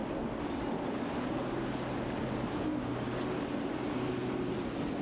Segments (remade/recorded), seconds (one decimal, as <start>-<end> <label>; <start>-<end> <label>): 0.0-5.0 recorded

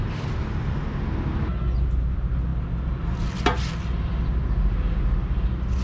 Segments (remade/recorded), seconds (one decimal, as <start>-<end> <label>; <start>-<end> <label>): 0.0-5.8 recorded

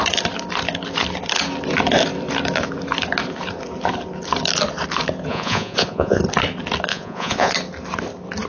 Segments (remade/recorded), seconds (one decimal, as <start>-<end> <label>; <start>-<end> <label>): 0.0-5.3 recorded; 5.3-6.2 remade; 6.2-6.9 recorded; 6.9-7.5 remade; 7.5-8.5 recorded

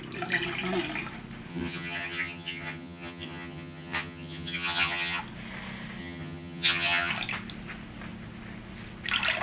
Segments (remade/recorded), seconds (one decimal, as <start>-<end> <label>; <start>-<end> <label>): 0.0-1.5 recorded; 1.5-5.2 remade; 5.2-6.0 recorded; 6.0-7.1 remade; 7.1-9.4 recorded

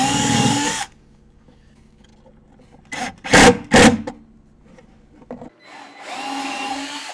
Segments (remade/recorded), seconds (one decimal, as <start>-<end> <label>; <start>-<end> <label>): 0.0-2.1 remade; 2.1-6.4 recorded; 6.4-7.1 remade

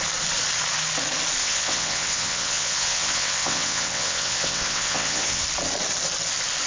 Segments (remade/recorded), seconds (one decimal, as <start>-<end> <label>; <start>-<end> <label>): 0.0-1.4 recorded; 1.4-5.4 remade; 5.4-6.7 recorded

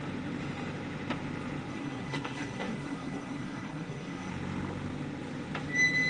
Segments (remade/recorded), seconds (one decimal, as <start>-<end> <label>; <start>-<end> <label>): 0.0-1.7 recorded; 1.7-4.3 remade; 4.3-6.1 recorded